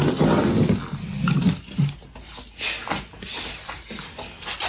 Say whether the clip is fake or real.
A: real